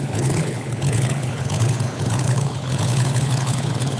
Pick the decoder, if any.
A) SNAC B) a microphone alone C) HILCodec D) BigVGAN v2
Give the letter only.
C